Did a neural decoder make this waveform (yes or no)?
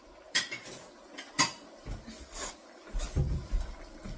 no